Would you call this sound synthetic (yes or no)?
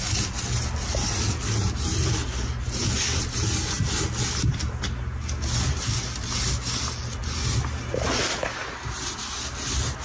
no